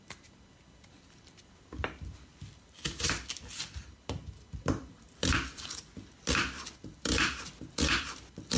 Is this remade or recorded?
recorded